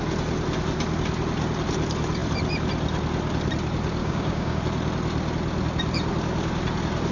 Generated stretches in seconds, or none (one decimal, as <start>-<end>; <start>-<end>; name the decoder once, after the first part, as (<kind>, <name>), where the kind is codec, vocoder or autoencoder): 4.0-4.6 (codec, DAC)